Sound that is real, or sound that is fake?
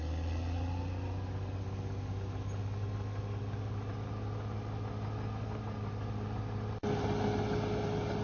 real